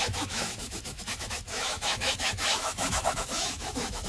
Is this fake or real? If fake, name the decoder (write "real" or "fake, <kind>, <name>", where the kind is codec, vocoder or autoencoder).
fake, autoencoder, DAC-VAE